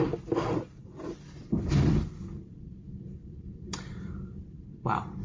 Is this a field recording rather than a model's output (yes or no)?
no